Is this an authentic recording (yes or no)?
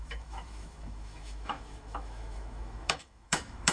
no